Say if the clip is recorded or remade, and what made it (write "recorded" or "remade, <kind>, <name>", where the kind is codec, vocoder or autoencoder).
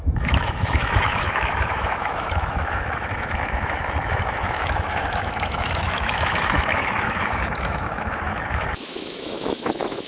remade, autoencoder, DAC-VAE